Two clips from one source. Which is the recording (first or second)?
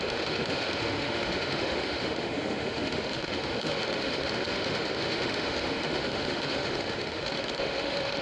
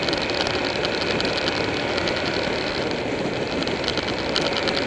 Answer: second